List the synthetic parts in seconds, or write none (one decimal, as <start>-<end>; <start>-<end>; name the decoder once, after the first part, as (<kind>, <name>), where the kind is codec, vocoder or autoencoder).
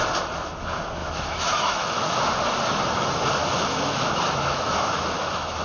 1.0-2.2 (autoencoder, DAC-VAE); 3.4-5.6